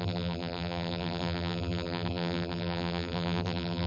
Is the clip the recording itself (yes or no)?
no